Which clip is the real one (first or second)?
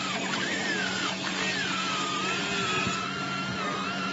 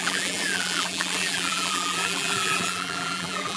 first